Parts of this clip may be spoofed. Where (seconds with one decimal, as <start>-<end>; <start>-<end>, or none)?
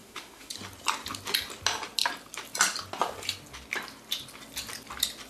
0.0-0.5